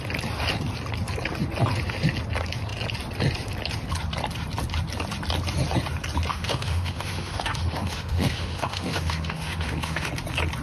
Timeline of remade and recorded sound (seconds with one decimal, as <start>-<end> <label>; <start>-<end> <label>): 0.0-6.3 recorded; 6.3-10.1 remade; 10.1-10.6 recorded